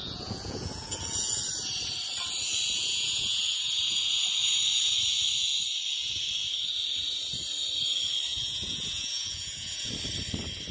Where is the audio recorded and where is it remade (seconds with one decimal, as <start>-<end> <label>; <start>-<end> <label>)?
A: 0.0-1.4 remade; 1.4-2.8 recorded; 2.8-3.4 remade; 3.4-8.3 recorded; 8.3-9.9 remade; 9.9-10.7 recorded